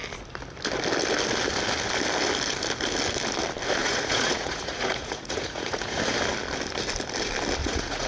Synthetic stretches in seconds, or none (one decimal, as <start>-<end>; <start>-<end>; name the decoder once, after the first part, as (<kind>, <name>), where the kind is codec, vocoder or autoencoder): 3.8-6.0 (vocoder, Vocos); 7.6-8.1

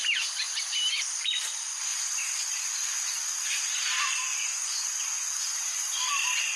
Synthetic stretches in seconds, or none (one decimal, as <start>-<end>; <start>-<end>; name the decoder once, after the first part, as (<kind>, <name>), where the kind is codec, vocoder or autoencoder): 4.3-6.1 (vocoder, Vocos)

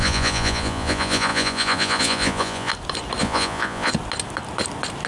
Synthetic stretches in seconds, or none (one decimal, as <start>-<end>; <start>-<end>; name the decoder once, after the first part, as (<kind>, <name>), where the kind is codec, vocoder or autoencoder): 0.0-2.7 (vocoder, Vocos); 3.2-3.9

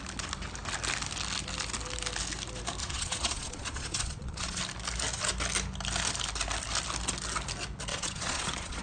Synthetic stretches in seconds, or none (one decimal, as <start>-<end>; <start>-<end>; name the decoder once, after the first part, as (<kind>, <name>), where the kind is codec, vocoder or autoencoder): 2.8-4.6 (vocoder, Vocos); 7.9-8.8

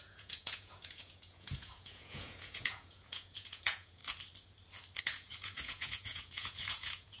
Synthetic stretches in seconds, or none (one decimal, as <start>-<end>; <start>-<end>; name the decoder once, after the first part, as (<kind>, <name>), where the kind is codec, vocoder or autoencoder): 0.0-4.0 (vocoder, Vocos); 5.0-7.2

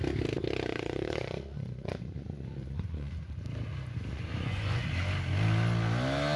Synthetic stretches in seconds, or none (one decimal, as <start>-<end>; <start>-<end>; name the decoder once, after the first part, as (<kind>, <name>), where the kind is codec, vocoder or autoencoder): 0.7-3.2 (vocoder, Vocos); 4.1-4.9

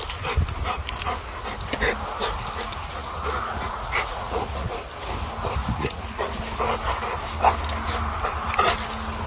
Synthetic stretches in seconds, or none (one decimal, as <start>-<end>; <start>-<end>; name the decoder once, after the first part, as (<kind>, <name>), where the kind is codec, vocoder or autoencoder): 3.0-4.7 (vocoder, Vocos); 5.6-6.4

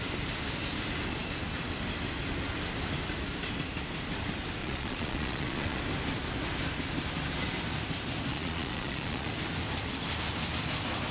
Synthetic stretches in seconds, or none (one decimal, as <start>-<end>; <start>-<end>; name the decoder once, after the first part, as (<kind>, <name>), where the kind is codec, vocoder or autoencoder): 4.6-5.8 (vocoder, Vocos); 8.3-9.3